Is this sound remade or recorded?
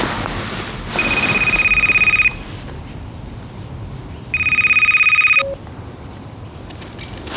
recorded